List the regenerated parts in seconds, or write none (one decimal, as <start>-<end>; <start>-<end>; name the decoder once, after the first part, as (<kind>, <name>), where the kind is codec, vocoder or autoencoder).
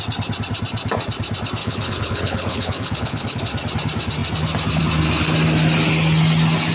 1.6-3.4 (codec, HILCodec)